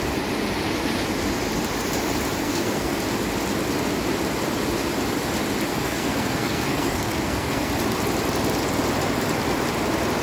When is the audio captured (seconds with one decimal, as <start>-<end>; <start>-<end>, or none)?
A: 0.0-2.4; 3.0-5.7; 7.7-10.2